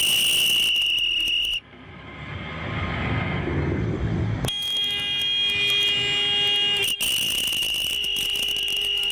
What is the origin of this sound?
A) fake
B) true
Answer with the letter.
B